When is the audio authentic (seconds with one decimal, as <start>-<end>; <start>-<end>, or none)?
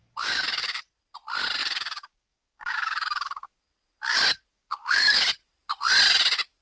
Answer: 0.8-1.6; 3.6-4.5; 5.2-6.6